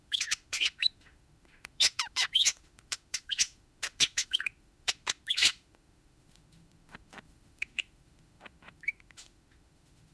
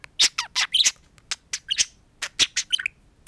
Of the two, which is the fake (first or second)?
first